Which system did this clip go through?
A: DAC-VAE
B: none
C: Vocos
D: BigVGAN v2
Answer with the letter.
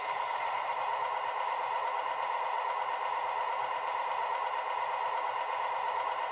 D